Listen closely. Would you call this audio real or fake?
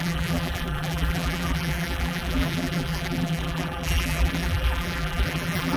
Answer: fake